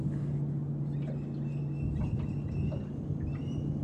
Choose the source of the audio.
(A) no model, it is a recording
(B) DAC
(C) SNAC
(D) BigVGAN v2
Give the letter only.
A